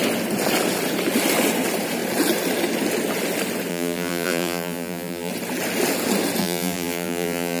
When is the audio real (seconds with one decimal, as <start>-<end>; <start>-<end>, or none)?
0.0-3.7; 5.3-6.4